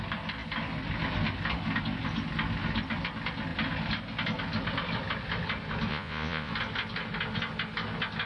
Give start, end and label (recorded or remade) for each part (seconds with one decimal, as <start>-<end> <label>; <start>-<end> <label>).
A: 0.0-5.9 recorded; 5.9-6.5 remade; 6.5-8.3 recorded